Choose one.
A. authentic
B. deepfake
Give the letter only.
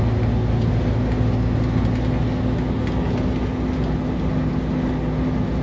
A